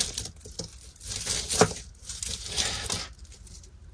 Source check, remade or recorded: recorded